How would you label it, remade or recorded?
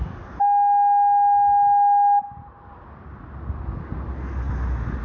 recorded